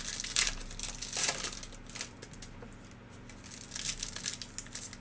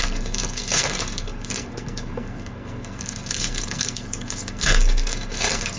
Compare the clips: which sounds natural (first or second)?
first